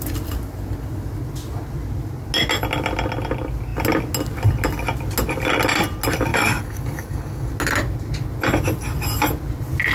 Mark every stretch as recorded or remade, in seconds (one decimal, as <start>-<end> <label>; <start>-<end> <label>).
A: 0.0-6.3 recorded; 6.3-7.5 remade; 7.5-9.9 recorded